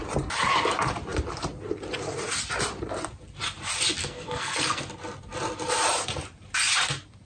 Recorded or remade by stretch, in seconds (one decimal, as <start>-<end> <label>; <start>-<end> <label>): 0.0-4.0 recorded; 4.0-4.8 remade; 4.8-7.2 recorded